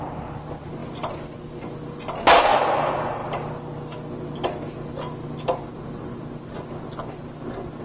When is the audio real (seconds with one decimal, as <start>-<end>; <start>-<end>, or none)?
0.0-0.8; 2.6-7.8